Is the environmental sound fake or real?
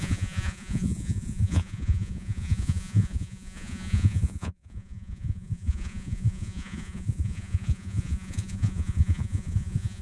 fake